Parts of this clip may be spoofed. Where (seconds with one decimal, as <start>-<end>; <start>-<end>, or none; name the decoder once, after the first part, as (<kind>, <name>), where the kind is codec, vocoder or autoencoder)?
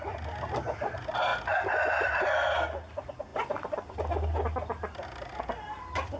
none